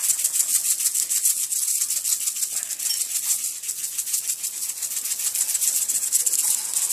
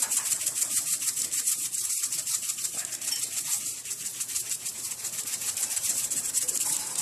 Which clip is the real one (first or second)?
first